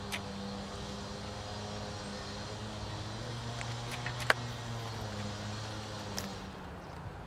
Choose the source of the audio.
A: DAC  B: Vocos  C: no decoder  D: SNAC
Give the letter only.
C